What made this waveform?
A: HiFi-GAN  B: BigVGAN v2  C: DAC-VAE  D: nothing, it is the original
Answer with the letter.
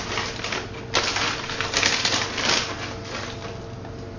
D